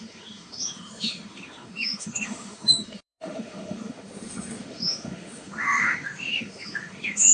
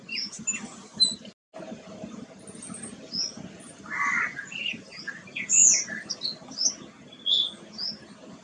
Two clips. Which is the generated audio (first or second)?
first